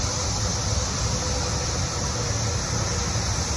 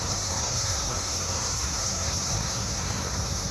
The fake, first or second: second